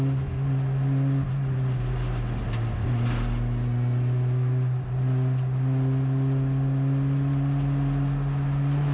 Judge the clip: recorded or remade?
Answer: recorded